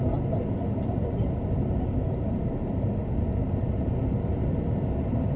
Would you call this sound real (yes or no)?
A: yes